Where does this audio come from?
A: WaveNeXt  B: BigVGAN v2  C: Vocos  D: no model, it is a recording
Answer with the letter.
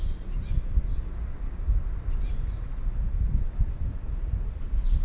D